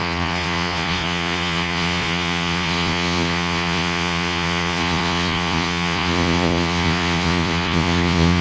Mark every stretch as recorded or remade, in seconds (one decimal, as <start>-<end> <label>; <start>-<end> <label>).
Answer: 0.0-8.4 remade